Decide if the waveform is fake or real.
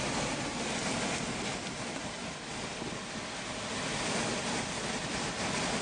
real